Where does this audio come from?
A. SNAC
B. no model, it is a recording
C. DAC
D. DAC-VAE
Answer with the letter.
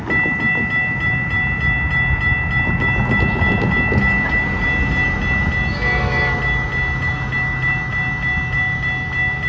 B